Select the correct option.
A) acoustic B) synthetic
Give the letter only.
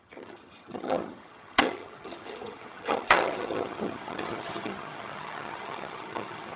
B